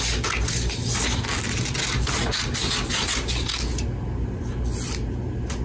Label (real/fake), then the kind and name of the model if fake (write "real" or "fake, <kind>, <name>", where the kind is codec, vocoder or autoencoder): real